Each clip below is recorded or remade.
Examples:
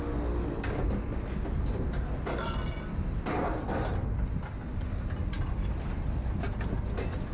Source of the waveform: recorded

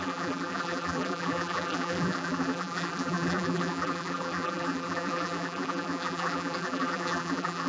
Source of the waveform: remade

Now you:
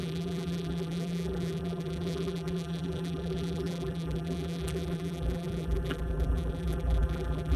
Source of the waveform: remade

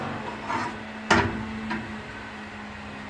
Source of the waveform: recorded